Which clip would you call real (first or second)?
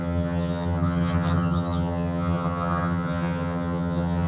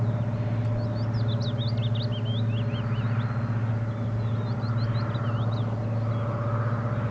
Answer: second